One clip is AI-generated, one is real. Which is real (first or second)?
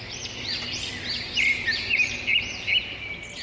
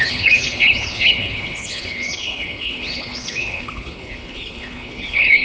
first